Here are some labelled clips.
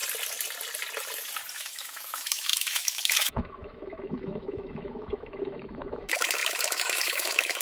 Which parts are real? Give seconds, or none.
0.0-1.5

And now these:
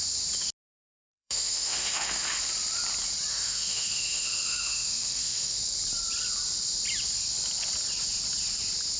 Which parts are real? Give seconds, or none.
0.0-1.1; 2.3-3.3; 5.6-9.0

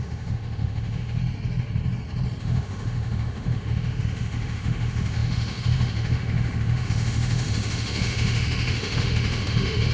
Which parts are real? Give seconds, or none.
1.2-2.4

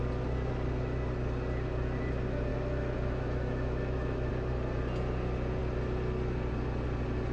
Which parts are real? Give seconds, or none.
0.0-2.5; 4.3-7.3

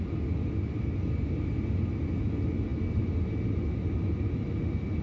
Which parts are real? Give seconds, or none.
0.0-5.0